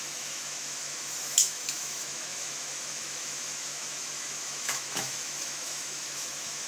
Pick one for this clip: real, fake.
fake